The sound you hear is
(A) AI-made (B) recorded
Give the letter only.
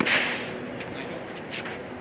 B